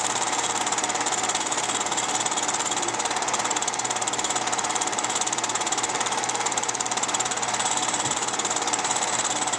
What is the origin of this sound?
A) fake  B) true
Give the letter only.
A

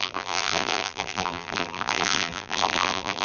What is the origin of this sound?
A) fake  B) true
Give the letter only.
A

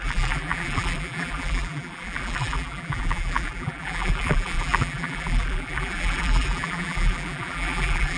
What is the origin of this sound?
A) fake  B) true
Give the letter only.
A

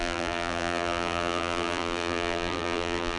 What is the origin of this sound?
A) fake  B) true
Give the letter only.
A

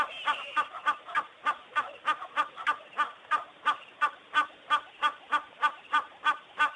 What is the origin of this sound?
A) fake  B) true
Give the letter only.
A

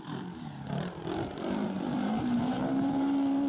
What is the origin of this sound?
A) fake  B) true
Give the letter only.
A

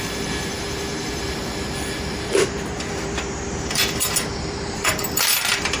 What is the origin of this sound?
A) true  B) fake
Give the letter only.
B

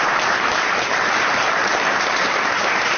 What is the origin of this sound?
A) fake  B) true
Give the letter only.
A